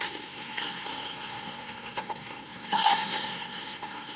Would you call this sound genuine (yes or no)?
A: no